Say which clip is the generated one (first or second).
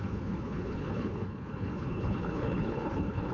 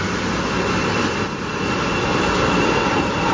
first